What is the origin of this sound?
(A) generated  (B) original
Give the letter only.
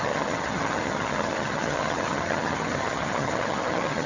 A